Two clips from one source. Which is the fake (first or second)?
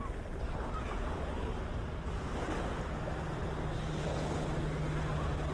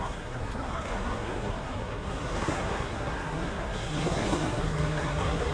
second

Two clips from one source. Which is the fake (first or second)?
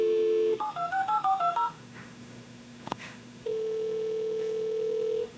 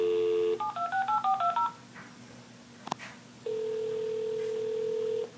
first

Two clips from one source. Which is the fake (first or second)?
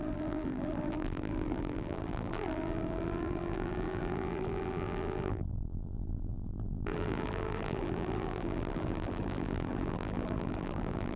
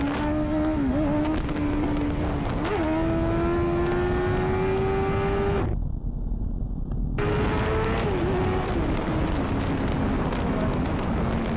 first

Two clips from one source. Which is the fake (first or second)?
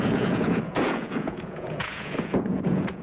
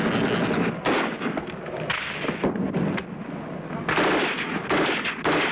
first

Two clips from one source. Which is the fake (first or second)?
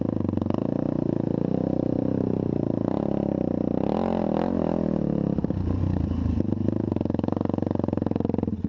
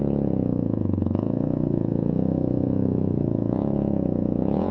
second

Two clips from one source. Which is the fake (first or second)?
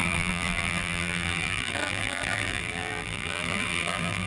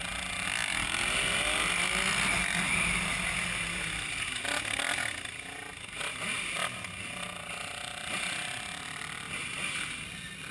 first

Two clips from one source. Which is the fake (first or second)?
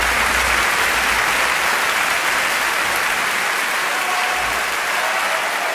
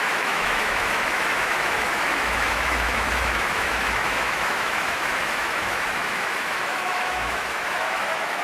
second